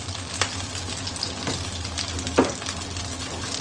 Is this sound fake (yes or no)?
no